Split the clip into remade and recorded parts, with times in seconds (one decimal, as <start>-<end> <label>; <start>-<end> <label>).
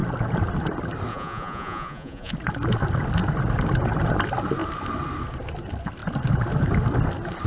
0.0-1.1 recorded; 1.1-2.3 remade; 2.3-7.5 recorded